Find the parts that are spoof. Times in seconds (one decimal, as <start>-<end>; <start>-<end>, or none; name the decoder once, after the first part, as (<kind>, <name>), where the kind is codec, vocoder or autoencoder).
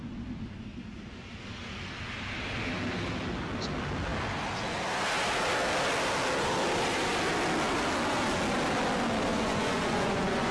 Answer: 9.3-10.5 (vocoder, Vocos)